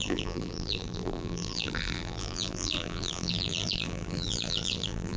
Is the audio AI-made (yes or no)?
yes